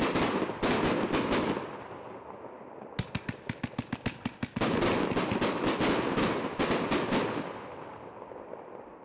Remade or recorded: recorded